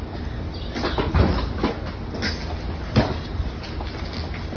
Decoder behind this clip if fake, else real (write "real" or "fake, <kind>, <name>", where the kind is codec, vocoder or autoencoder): real